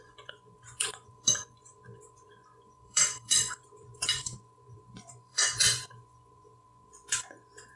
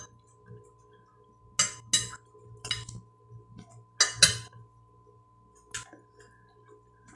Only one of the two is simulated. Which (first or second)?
first